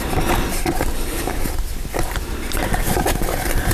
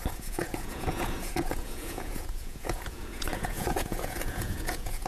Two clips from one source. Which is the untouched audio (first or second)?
first